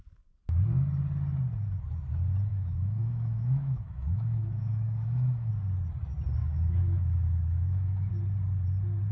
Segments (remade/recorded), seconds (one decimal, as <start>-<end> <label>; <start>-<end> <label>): 0.0-2.5 recorded; 2.5-5.5 remade; 5.5-6.4 recorded; 6.4-8.1 remade; 8.1-9.1 recorded